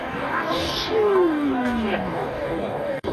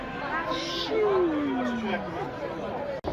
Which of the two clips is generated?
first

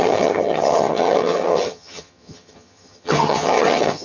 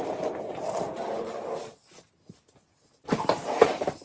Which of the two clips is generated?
first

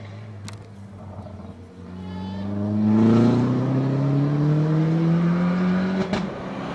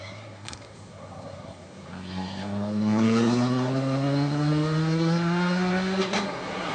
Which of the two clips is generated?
second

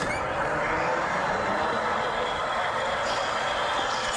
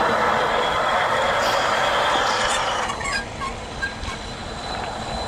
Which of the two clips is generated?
second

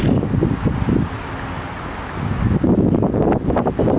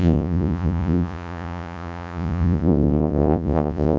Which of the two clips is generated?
second